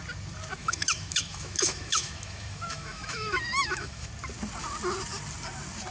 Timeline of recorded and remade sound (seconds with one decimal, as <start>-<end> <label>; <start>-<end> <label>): 0.0-0.6 recorded; 0.6-4.1 remade; 4.1-5.9 recorded